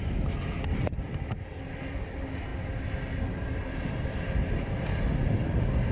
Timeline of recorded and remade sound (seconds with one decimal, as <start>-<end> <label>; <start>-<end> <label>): 0.0-5.9 recorded